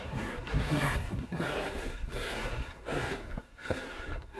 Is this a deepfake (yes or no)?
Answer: yes